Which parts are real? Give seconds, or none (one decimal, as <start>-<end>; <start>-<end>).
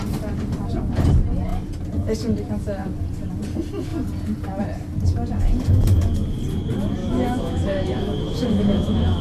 0.0-7.0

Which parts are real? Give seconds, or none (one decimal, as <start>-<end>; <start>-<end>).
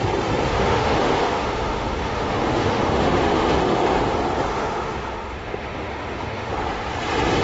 0.0-0.5; 4.0-4.5; 6.5-7.4